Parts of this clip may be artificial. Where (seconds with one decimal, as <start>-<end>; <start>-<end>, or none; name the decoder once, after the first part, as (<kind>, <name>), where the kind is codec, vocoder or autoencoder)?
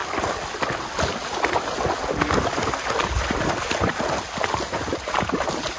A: none